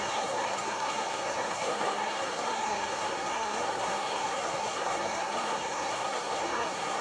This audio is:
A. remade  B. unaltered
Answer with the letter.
A